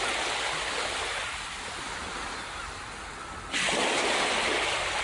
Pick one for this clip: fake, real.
real